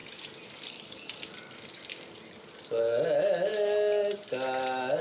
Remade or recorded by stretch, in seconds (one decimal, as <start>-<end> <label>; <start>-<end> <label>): 0.0-5.0 recorded